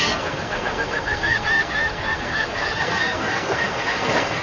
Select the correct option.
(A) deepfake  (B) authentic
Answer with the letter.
A